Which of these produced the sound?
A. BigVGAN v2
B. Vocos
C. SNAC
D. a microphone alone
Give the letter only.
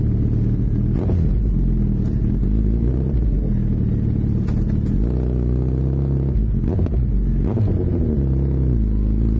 D